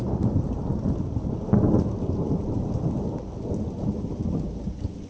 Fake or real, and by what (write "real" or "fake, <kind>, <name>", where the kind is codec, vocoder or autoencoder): real